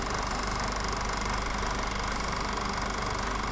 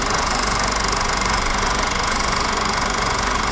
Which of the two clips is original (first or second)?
first